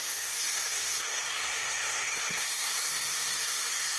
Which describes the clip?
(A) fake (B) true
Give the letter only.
A